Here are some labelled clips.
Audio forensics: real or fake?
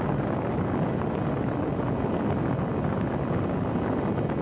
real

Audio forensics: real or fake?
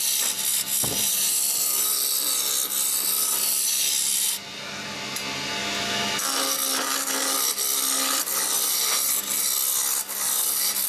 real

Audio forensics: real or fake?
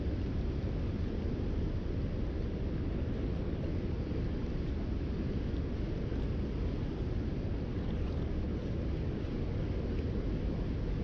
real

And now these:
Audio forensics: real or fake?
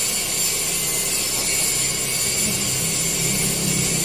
real